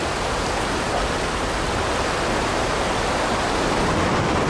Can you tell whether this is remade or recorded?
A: recorded